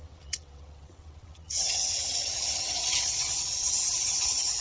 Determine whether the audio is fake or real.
fake